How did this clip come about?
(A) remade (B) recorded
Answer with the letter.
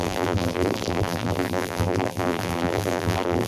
A